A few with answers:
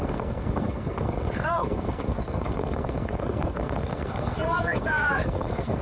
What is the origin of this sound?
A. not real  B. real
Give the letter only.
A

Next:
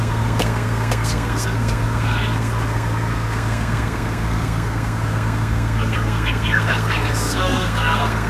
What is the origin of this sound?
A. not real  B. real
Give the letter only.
A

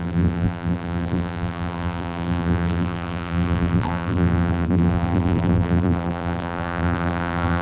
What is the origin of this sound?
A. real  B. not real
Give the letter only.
B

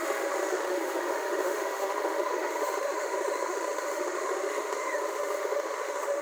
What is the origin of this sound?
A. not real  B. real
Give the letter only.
A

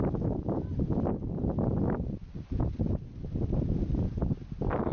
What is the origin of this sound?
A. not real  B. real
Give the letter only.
B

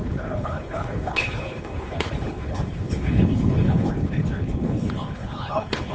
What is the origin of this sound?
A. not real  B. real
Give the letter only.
A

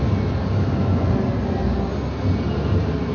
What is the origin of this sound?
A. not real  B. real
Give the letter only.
B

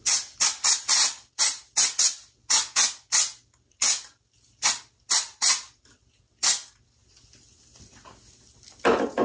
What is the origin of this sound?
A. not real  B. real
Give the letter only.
B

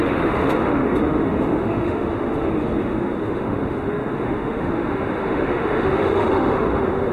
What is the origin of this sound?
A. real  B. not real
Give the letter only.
B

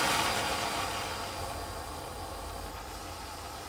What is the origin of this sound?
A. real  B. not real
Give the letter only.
A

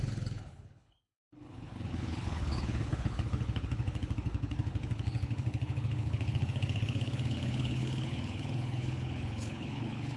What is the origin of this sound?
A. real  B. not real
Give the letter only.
B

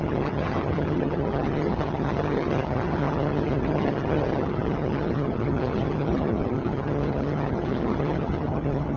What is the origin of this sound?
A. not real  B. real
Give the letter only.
A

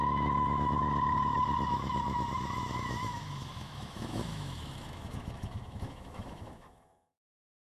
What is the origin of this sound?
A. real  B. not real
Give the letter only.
B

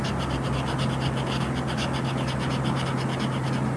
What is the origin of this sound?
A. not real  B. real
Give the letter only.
B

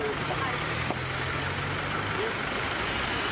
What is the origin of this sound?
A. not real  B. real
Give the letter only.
B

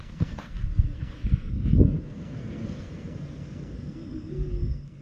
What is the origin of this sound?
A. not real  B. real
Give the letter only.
A